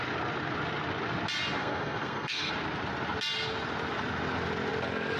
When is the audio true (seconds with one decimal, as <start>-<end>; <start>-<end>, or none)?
0.0-1.6; 2.5-5.2